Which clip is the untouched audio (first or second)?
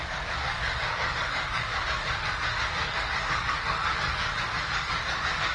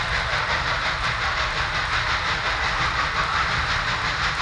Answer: second